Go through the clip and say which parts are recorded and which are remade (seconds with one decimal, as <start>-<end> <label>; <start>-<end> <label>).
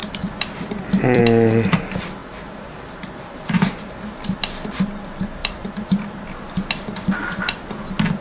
0.0-1.2 remade; 1.2-2.2 recorded; 2.2-2.9 remade; 2.9-5.4 recorded; 5.4-6.7 remade; 6.7-8.2 recorded